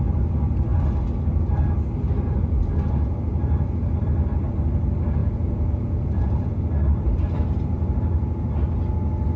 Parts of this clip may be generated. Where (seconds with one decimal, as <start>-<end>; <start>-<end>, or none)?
5.2-6.6